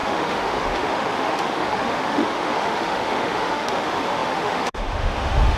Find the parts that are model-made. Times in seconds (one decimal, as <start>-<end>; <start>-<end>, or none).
0.0-5.6